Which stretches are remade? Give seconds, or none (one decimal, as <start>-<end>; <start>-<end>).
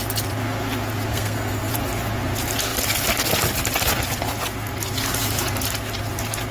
1.1-1.7